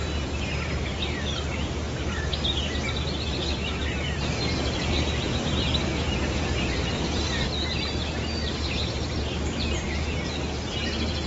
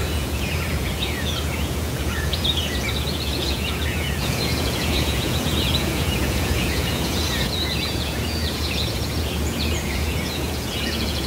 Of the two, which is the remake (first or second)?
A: second